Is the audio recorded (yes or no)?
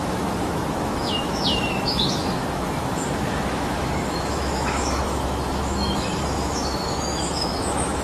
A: no